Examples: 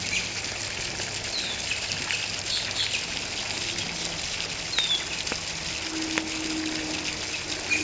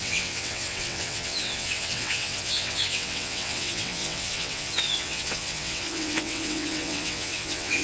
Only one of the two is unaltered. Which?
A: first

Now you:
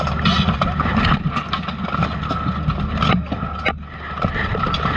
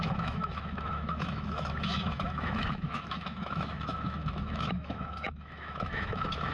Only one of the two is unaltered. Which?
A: first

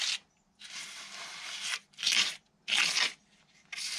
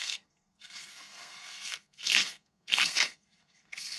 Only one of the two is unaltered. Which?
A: first